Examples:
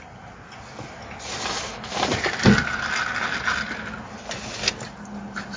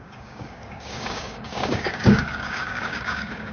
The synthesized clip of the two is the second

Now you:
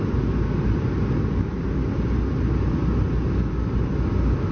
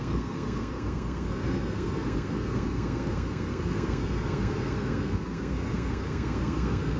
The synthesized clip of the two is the second